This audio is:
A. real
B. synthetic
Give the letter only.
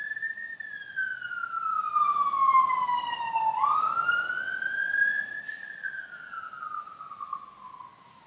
A